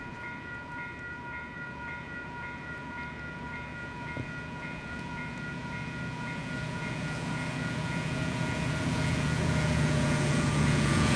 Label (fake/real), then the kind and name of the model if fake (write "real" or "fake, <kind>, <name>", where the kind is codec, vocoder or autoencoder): fake, vocoder, Vocos